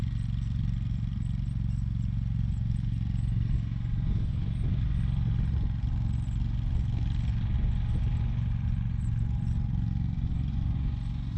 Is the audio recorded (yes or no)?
yes